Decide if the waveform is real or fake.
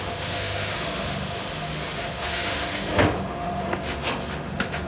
fake